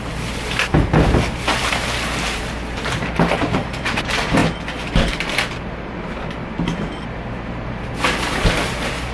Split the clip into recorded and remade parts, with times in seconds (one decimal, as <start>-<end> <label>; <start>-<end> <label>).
0.0-4.4 remade; 4.4-4.9 recorded; 4.9-9.1 remade